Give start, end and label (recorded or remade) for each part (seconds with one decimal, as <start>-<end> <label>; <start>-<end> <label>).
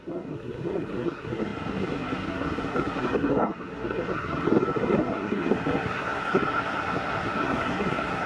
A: 0.0-8.3 remade